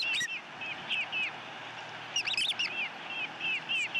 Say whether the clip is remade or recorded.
recorded